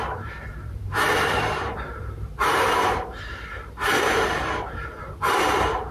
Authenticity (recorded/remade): remade